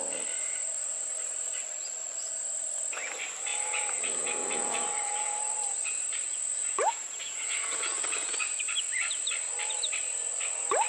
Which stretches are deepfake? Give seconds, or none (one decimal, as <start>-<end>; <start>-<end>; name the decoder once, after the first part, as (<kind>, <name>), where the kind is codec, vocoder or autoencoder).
3.5-8.6 (vocoder, Vocos)